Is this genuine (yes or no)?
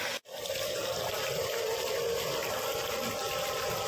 yes